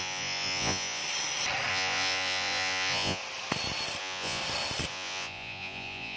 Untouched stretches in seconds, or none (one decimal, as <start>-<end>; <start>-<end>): 1.0-1.7; 3.2-4.0; 4.4-4.9